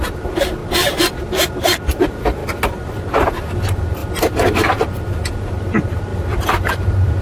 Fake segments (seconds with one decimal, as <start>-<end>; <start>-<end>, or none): 0.0-0.6; 2.0-2.4; 3.1-4.0; 5.4-7.2